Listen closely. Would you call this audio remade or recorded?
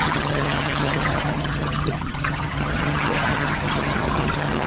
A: remade